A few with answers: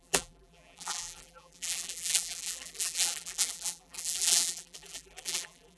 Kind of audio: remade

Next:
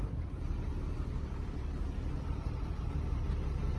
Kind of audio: remade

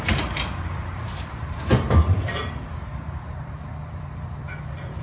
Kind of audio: remade